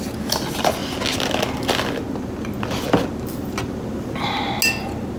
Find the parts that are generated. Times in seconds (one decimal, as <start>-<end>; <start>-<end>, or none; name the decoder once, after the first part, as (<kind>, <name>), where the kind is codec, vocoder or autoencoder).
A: none